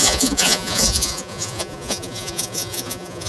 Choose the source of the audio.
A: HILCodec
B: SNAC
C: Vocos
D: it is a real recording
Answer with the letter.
C